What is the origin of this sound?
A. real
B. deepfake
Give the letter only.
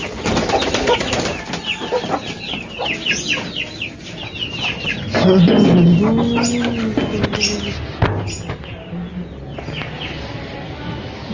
A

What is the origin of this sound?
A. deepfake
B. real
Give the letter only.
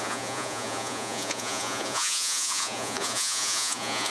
A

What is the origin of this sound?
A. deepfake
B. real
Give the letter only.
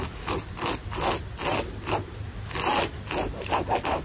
B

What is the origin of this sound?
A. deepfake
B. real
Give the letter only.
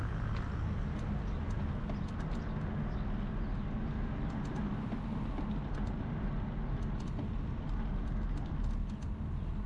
B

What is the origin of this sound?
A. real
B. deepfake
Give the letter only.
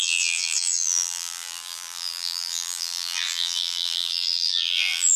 B